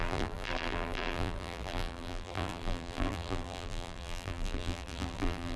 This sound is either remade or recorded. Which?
remade